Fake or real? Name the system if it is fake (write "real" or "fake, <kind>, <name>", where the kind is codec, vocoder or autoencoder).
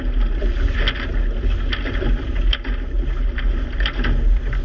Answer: real